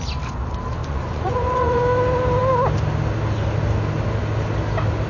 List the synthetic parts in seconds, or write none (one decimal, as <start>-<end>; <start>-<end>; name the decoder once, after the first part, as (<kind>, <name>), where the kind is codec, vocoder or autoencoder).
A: 0.8-1.8 (vocoder, Vocos)